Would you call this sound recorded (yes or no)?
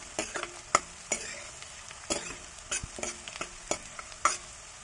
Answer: yes